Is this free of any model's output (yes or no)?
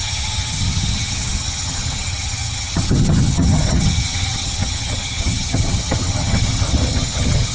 no